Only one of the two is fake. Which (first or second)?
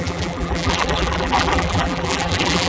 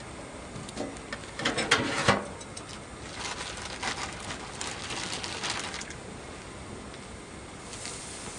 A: first